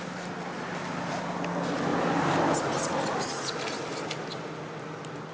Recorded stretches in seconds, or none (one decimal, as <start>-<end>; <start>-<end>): 0.0-5.3